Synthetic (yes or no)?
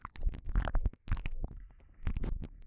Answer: no